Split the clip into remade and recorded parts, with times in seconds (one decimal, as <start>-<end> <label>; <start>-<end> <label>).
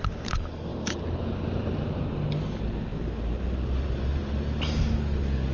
0.0-0.7 recorded; 0.7-2.1 remade; 2.1-2.9 recorded; 2.9-4.2 remade; 4.2-5.5 recorded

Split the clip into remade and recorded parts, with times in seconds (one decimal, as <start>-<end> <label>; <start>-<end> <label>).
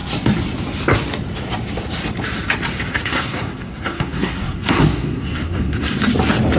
0.0-2.9 recorded; 2.9-6.0 remade; 6.0-6.6 recorded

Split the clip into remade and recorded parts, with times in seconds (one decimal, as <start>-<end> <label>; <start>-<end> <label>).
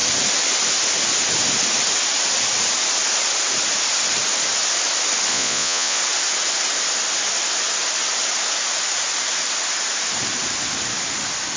0.0-5.3 recorded; 5.3-6.0 remade; 6.0-11.6 recorded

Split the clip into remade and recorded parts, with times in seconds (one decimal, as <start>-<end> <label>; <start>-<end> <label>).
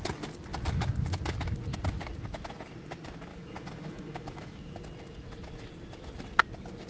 0.0-3.3 recorded; 3.3-4.8 remade; 4.8-6.9 recorded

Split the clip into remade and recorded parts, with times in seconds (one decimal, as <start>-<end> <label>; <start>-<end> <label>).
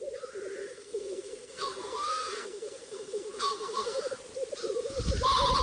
0.0-0.6 recorded; 0.6-4.0 remade; 4.0-5.6 recorded